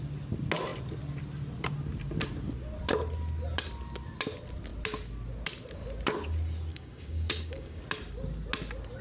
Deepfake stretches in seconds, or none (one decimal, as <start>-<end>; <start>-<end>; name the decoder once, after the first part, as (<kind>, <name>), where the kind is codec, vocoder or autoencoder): 6.7-7.8 (codec, DAC)